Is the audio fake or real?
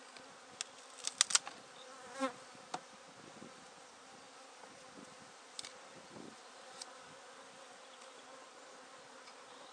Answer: real